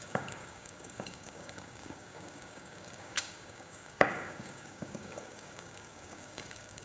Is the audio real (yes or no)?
no